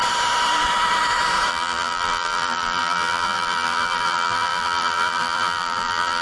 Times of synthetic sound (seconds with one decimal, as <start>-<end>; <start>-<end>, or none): 1.5-6.2